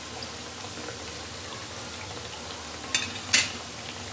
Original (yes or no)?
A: yes